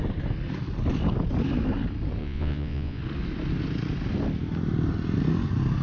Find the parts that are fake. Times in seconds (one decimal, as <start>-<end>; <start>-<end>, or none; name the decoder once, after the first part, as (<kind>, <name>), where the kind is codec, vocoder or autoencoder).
2.2-3.0 (vocoder, Vocos)